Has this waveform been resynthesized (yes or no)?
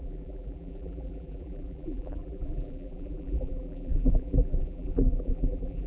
yes